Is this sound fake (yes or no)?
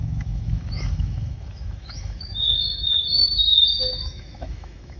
yes